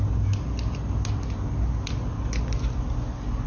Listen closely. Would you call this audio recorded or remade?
recorded